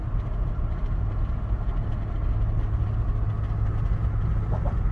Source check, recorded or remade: recorded